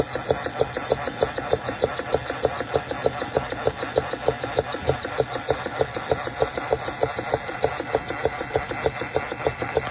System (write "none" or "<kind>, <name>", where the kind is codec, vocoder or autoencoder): none